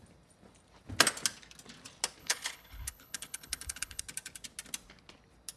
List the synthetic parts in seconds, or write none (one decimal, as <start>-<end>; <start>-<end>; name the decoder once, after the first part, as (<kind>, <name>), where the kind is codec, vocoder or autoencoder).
2.2-4.0 (codec, HILCodec)

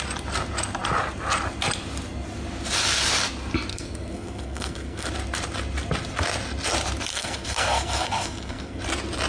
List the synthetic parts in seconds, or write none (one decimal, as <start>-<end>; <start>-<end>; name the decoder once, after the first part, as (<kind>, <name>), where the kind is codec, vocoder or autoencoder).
3.7-5.1 (codec, SNAC); 7.1-8.8